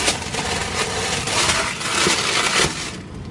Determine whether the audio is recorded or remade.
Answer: recorded